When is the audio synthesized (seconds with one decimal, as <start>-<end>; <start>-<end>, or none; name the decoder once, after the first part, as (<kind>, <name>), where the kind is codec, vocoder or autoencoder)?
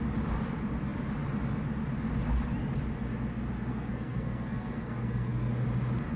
3.7-5.5 (codec, SNAC)